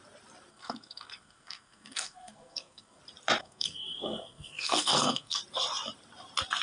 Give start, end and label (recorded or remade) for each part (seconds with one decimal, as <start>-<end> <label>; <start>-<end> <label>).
0.0-0.5 recorded; 0.5-3.0 remade; 3.0-3.4 recorded; 3.4-5.4 remade; 5.4-6.6 recorded